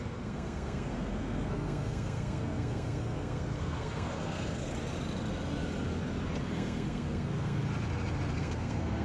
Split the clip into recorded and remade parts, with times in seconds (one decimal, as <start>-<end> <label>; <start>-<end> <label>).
0.0-4.7 remade; 4.7-6.4 recorded; 6.4-7.6 remade; 7.6-8.3 recorded; 8.3-9.0 remade